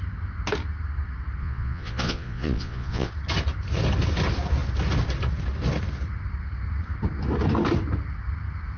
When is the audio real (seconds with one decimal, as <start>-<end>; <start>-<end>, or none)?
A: 0.0-1.4; 3.1-8.8